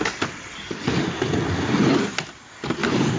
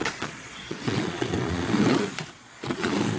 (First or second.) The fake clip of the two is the second